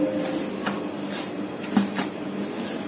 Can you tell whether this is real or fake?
real